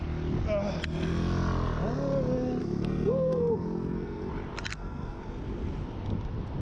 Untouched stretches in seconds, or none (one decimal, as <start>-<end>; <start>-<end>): 0.0-2.6; 4.3-4.7; 5.2-6.6